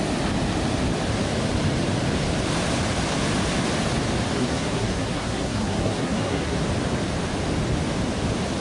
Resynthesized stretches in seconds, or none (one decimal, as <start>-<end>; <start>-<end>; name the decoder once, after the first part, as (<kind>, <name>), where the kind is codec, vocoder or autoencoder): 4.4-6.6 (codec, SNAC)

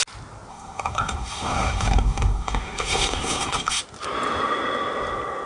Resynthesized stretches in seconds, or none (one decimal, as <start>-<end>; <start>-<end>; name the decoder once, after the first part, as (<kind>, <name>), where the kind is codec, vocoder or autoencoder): 0.5-3.8 (codec, SNAC)

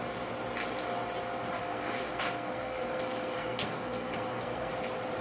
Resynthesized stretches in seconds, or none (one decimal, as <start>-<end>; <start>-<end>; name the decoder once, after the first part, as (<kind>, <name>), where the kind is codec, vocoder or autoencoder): 1.6-4.7 (codec, SNAC)